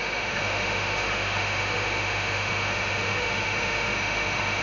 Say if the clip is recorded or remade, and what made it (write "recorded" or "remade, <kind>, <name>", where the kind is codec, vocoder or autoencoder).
remade, autoencoder, DAC-VAE